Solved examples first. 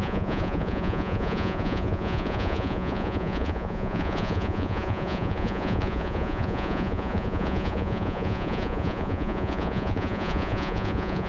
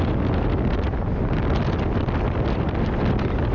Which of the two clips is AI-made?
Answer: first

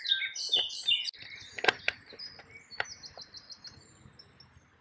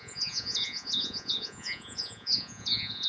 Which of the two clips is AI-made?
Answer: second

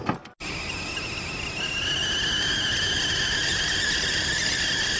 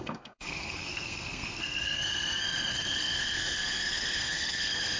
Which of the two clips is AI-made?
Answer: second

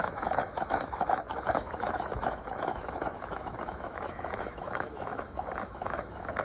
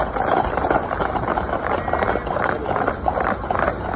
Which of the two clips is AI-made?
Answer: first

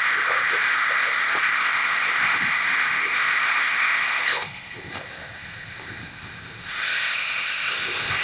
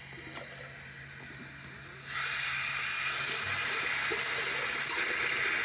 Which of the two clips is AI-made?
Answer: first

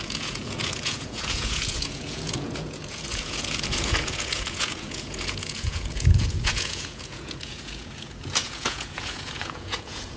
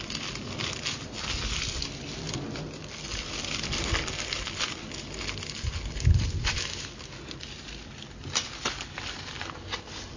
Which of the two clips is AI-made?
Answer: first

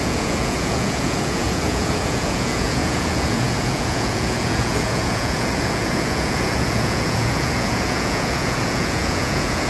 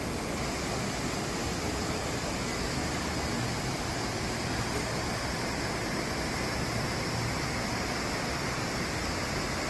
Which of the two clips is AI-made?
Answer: first